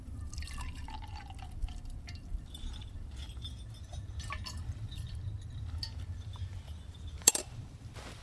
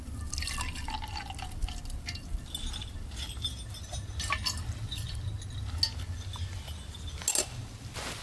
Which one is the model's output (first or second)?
first